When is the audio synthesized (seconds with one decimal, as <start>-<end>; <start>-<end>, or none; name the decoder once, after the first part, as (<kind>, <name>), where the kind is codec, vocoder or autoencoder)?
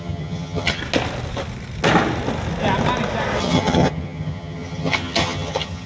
0.0-0.8 (vocoder, HiFi-GAN); 3.4-5.9